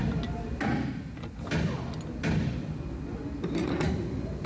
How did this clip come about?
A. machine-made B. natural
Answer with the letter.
B